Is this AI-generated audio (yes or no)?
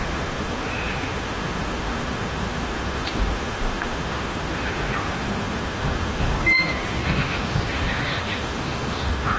yes